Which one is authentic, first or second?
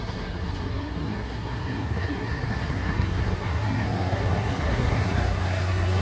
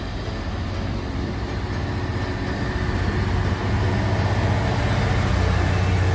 second